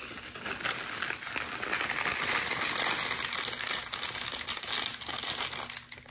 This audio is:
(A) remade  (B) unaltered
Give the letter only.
B